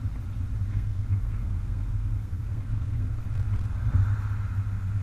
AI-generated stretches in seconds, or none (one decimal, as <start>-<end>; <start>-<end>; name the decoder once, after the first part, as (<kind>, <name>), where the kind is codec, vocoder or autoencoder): 0.7-3.2 (codec, SNAC)